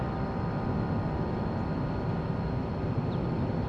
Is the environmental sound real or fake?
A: real